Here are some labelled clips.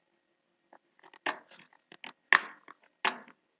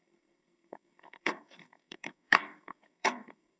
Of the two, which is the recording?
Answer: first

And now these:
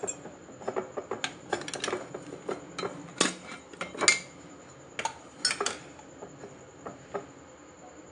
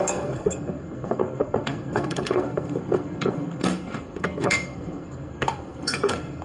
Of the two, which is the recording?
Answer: first